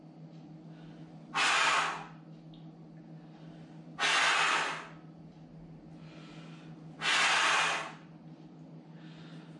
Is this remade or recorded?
recorded